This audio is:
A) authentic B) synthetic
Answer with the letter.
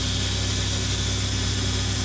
A